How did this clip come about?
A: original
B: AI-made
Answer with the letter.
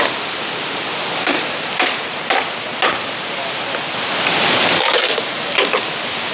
A